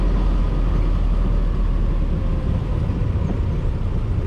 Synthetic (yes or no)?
no